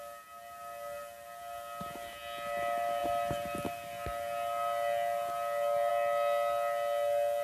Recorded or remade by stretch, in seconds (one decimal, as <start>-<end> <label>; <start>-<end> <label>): 0.0-7.4 recorded